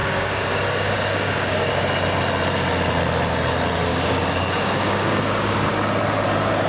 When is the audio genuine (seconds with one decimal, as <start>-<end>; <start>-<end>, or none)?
1.7-3.9; 5.7-6.7